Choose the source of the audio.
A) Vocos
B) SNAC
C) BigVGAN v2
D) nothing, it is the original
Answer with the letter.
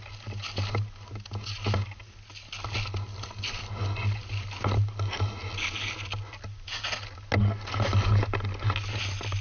D